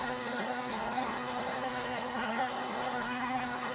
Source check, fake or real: fake